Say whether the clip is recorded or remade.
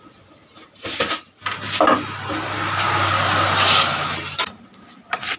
recorded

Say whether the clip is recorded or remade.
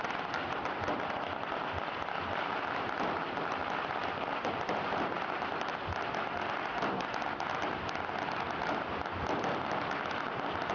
recorded